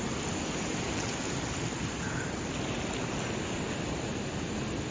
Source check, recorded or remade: recorded